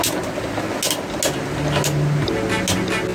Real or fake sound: real